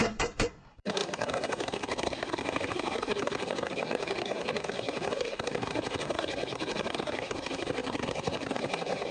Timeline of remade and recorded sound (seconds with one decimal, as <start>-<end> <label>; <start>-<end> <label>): 0.0-9.1 remade